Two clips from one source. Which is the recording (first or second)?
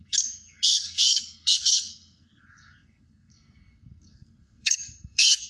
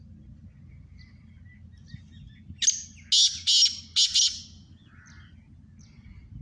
second